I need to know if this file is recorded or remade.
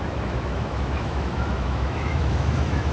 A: remade